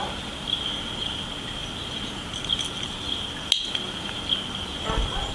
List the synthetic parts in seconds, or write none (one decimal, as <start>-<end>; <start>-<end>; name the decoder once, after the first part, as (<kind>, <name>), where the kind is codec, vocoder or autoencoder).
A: none